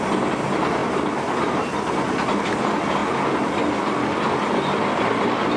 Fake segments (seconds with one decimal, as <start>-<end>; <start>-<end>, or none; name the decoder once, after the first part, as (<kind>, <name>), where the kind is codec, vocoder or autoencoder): none